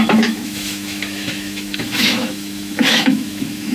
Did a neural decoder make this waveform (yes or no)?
yes